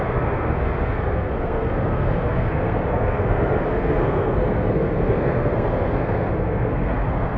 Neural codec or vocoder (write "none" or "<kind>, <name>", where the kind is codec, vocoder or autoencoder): codec, SNAC